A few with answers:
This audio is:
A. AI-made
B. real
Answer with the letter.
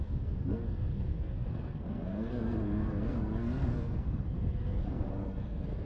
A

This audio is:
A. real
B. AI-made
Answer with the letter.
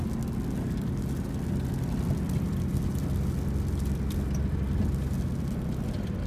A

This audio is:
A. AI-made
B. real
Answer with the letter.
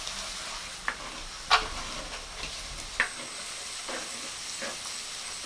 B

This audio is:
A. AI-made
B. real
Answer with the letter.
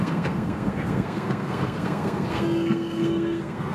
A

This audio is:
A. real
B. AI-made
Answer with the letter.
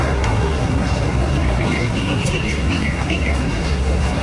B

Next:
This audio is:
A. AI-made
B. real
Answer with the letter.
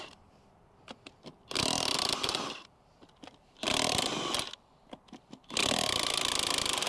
B